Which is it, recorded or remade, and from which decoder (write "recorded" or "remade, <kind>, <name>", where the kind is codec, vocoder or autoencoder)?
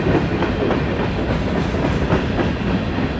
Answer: recorded